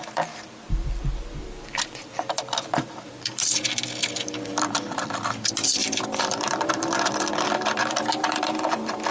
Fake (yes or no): yes